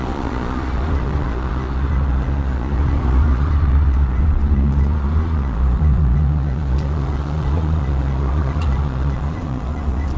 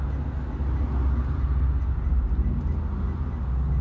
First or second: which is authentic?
second